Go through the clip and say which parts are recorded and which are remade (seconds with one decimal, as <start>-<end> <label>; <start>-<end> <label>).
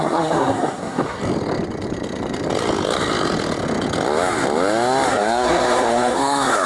0.0-1.2 remade; 1.2-5.1 recorded; 5.1-6.7 remade